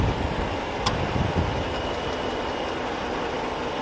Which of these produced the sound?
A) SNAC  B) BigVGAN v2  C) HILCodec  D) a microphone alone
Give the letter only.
D